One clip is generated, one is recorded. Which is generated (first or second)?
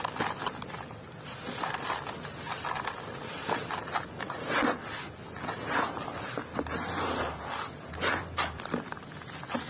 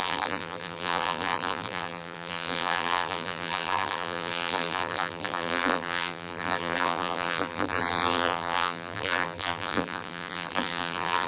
second